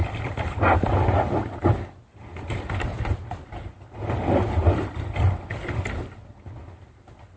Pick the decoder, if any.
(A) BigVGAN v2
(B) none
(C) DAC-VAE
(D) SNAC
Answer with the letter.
B